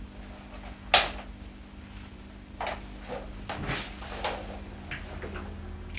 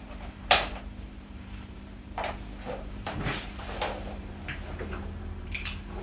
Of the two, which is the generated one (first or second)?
second